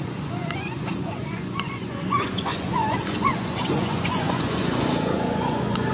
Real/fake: fake